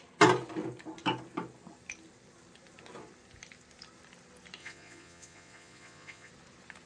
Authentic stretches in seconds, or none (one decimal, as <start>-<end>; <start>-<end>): 0.0-4.6; 6.3-6.9